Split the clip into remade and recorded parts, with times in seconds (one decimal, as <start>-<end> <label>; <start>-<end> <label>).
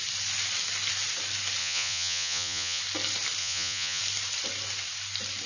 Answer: 0.0-1.6 recorded; 1.6-2.8 remade; 2.8-3.4 recorded; 3.4-4.0 remade; 4.0-5.5 recorded